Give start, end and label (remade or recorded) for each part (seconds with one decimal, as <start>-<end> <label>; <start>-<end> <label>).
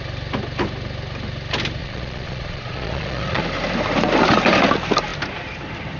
0.0-1.8 recorded; 1.8-3.4 remade; 3.4-6.0 recorded